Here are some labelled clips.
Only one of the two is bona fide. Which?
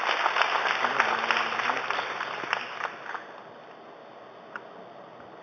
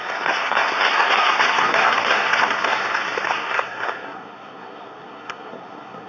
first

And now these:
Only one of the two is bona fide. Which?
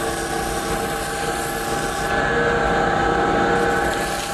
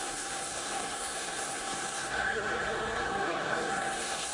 first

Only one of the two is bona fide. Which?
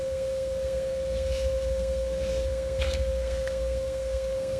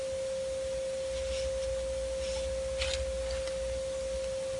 second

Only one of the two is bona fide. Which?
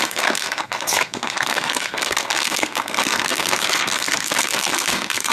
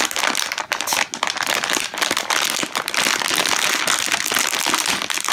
second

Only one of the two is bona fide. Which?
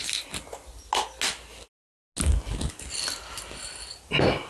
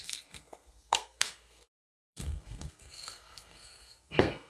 first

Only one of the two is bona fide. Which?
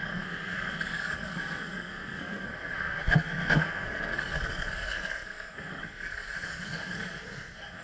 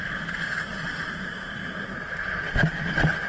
second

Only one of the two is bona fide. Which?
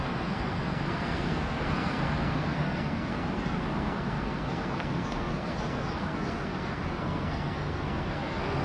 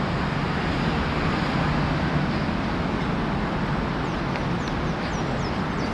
second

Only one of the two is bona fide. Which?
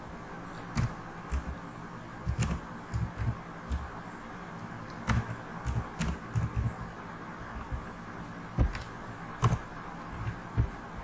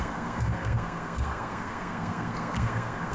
first